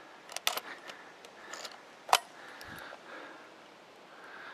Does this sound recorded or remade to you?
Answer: recorded